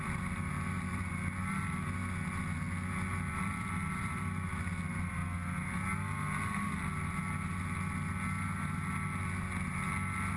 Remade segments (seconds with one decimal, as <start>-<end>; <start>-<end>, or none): 0.0-2.0; 3.3-5.2